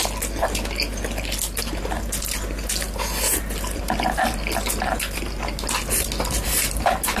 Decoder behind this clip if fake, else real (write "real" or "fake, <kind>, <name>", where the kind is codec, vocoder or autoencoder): real